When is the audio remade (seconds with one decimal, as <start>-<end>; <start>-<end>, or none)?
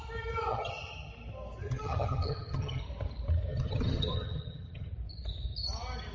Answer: 0.5-1.1; 1.6-2.8; 3.5-4.9